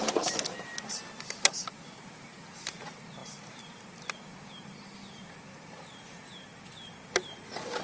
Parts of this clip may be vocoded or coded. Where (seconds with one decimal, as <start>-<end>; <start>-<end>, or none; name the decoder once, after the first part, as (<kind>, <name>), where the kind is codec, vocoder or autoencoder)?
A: none